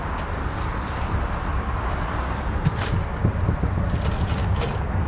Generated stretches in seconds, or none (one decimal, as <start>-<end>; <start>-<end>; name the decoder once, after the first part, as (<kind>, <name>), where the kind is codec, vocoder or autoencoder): 4.4-5.1 (codec, DAC)